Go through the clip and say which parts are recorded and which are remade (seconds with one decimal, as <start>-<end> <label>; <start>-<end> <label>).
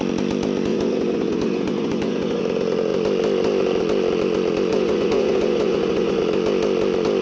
0.0-0.7 recorded; 0.7-2.4 remade; 2.4-4.7 recorded; 4.7-6.2 remade; 6.2-7.2 recorded